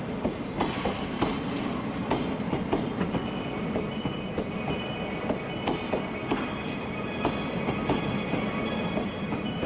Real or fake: real